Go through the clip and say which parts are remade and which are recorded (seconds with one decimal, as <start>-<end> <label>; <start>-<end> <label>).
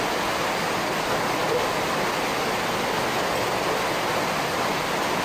0.0-5.2 recorded